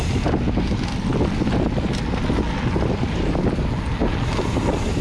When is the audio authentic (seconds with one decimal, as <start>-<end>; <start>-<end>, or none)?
0.0-5.0